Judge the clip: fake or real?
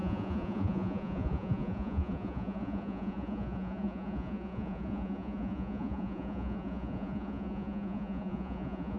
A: fake